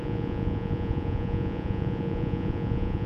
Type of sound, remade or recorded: remade